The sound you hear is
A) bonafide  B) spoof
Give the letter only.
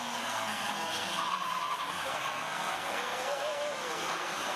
B